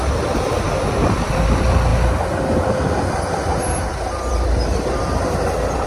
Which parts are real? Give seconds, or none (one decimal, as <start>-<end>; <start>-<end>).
none